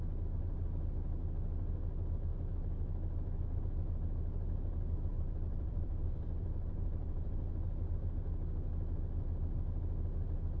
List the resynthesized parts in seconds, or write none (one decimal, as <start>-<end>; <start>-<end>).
5.1-7.5